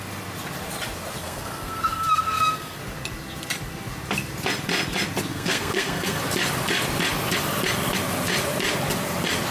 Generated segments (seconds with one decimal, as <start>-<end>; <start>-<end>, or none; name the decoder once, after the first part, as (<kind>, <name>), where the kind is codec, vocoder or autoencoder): 1.2-2.8 (codec, SNAC); 5.3-6.2